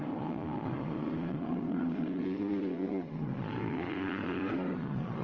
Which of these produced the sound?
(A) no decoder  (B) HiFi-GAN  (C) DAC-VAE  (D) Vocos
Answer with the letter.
D